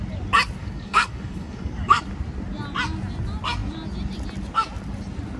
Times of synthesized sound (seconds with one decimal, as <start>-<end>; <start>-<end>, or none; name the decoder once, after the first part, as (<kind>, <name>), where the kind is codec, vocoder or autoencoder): 0.6-2.0 (codec, DAC)